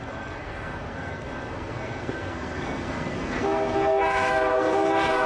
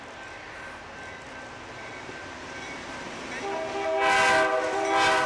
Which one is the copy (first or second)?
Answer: first